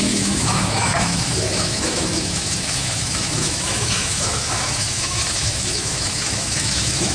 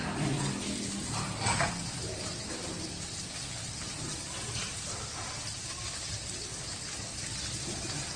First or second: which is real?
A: second